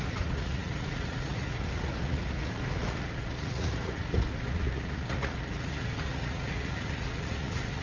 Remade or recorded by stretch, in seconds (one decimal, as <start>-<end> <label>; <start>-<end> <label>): 0.0-7.8 remade